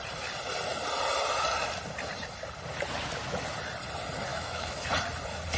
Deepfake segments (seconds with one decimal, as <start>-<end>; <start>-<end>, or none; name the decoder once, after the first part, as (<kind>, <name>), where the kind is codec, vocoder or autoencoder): 4.3-4.9 (autoencoder, DAC-VAE)